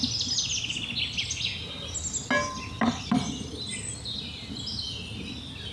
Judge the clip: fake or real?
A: real